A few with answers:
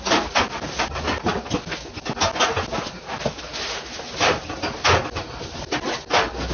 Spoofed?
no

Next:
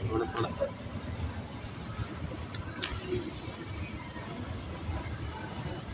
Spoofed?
no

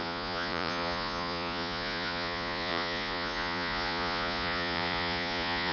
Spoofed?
yes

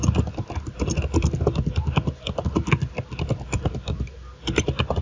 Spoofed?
no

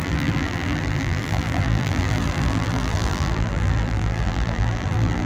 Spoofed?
yes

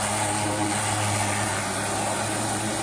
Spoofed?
no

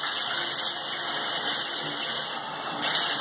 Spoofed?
no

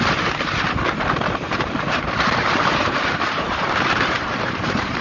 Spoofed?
yes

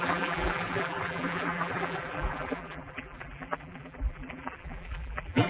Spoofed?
yes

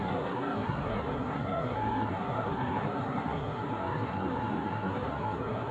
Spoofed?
yes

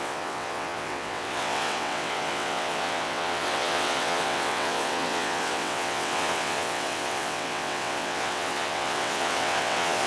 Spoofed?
yes